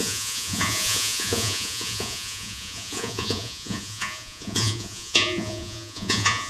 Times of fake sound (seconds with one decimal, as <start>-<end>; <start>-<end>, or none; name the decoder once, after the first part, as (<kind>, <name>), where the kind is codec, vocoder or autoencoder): 0.0-6.5 (vocoder, Vocos)